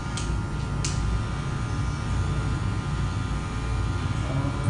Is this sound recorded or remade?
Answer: recorded